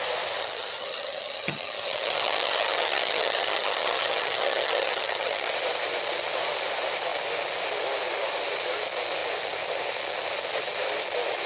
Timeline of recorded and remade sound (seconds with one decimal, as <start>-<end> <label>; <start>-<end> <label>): 0.0-0.4 recorded; 0.4-5.5 remade; 5.5-11.5 recorded